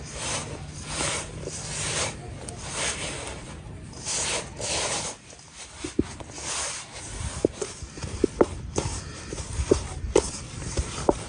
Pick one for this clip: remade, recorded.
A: recorded